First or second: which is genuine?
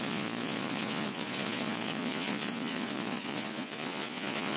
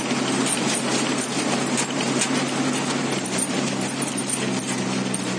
second